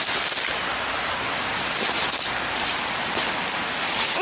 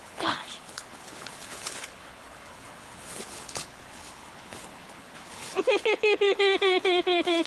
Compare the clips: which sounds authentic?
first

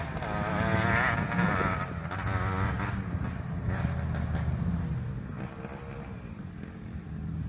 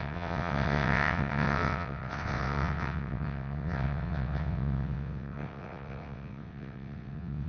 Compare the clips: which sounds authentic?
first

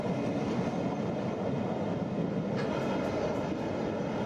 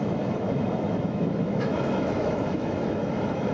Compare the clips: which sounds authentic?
first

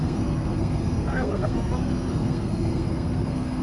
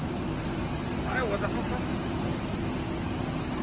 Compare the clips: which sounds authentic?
second